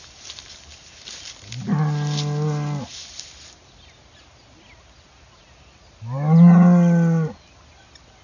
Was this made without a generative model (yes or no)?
yes